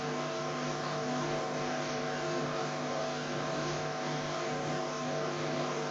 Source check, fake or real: fake